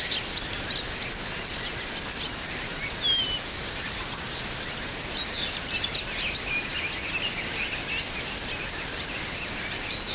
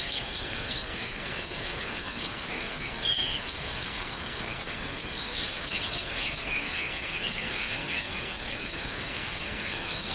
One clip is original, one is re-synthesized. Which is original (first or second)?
first